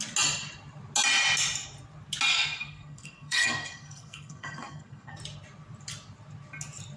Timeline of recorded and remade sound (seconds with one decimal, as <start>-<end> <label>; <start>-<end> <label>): 0.0-2.3 recorded; 2.3-5.2 remade; 5.2-7.0 recorded